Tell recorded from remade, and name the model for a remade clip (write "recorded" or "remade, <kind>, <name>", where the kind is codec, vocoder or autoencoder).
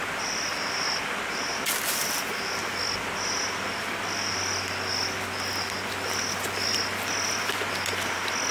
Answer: recorded